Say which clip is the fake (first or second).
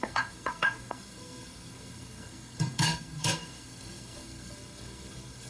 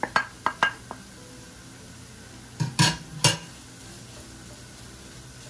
first